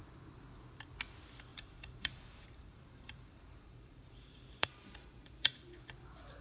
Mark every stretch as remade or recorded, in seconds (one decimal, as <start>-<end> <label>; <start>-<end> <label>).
0.0-1.5 recorded; 1.5-5.3 remade; 5.3-6.4 recorded

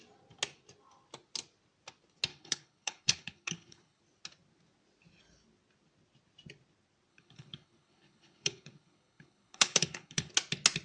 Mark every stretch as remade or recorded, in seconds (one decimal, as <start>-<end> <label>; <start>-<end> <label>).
0.0-2.3 recorded; 2.3-4.0 remade; 4.0-7.1 recorded; 7.1-10.3 remade; 10.3-10.8 recorded